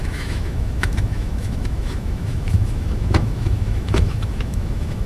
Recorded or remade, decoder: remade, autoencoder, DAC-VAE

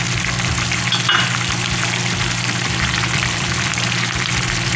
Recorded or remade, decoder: remade, vocoder, BigVGAN v2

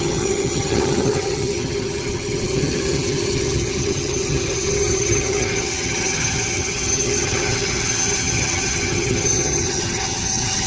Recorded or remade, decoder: remade, vocoder, HiFi-GAN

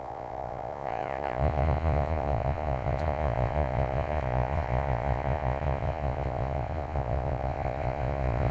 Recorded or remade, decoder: remade, vocoder, Vocos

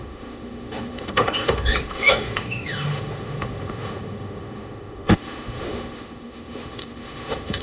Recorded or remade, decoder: remade, autoencoder, DAC-VAE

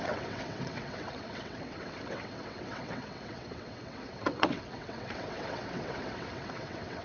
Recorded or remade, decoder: remade, vocoder, WaveNeXt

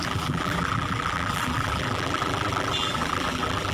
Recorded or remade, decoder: remade, vocoder, BigVGAN v2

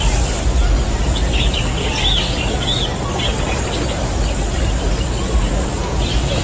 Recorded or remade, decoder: recorded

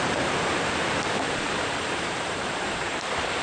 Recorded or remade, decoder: remade, vocoder, BigVGAN v2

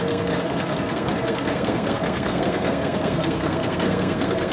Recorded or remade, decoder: remade, codec, SNAC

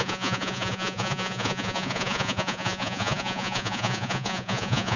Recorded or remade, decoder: remade, vocoder, Vocos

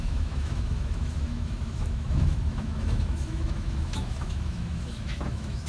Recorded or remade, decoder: remade, autoencoder, DAC-VAE